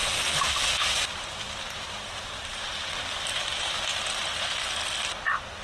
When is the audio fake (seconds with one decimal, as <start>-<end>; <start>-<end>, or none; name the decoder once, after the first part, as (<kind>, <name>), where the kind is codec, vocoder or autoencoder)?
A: 0.0-3.4 (vocoder, BigVGAN v2)